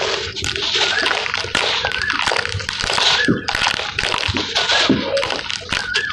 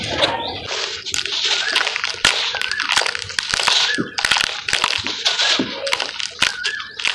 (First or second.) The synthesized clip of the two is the first